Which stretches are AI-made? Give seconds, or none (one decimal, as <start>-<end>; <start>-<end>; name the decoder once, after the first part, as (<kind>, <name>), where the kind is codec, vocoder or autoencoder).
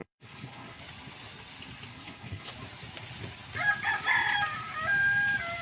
0.0-0.8 (codec, HILCodec); 1.9-2.5